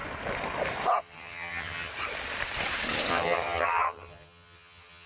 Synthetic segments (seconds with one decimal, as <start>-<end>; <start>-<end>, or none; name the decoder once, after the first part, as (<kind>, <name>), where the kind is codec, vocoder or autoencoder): 1.0-1.9 (vocoder, HiFi-GAN); 3.1-5.1